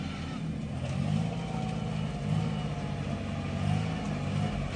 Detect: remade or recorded recorded